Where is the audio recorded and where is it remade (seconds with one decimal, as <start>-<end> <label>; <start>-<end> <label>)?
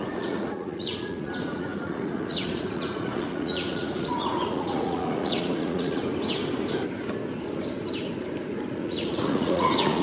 0.0-6.0 remade; 6.0-8.7 recorded; 8.7-10.0 remade